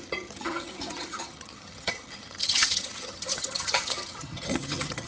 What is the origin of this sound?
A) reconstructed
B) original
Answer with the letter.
A